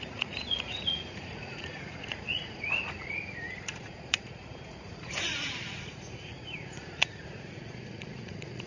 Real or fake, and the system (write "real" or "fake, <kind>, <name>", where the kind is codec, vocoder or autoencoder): fake, vocoder, Vocos